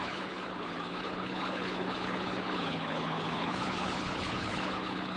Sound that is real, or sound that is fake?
fake